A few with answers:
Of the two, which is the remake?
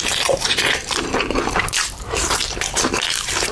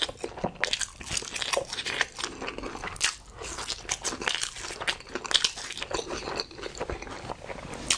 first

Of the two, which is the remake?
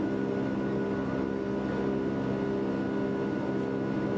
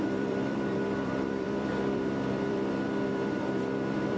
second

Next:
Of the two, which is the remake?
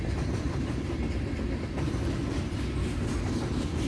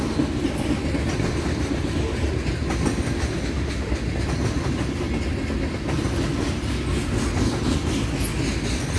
first